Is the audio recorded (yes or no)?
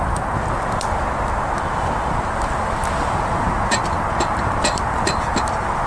yes